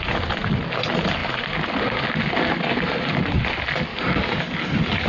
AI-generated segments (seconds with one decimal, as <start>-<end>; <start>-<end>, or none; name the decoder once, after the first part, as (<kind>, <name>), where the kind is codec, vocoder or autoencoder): 3.9-5.1 (codec, DAC)